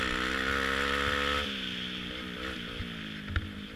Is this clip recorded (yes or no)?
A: yes